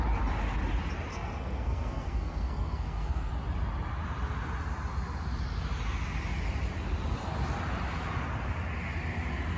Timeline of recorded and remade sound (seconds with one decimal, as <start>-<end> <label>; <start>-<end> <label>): 0.0-1.1 recorded; 1.1-3.3 remade; 3.3-9.6 recorded